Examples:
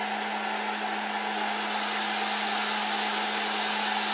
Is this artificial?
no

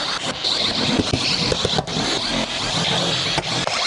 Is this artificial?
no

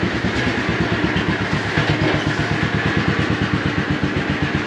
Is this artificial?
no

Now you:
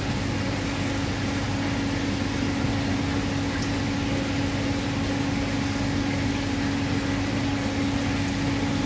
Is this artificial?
no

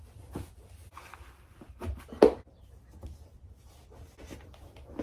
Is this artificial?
no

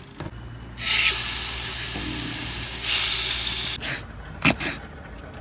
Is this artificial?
no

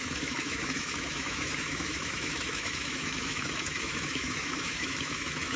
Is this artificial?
yes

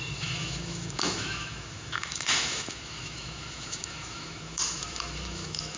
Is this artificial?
yes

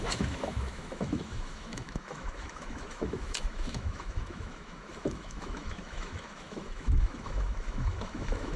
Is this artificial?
yes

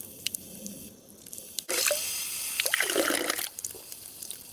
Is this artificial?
no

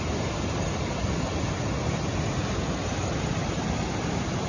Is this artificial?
no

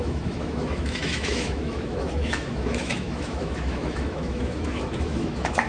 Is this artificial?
yes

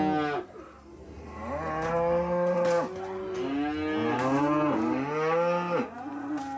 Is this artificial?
no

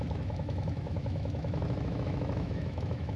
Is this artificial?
yes